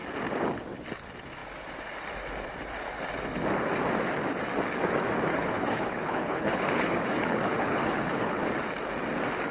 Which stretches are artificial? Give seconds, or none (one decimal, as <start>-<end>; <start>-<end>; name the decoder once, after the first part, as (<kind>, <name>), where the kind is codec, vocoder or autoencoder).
5.3-8.4 (codec, HILCodec)

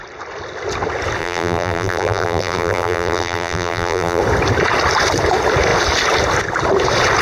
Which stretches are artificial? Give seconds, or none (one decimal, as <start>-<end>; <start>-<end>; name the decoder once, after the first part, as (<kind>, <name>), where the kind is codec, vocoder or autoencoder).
1.2-4.2 (vocoder, BigVGAN v2)